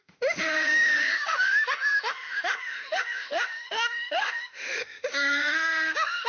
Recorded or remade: remade